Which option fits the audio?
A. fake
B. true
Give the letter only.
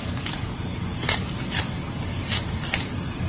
A